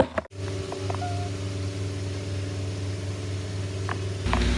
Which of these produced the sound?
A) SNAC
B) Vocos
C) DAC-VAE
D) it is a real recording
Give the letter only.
D